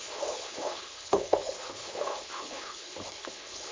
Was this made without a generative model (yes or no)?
no